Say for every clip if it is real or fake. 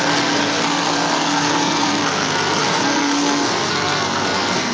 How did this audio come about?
fake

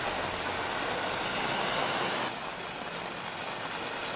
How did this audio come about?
real